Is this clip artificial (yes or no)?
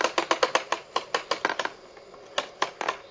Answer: no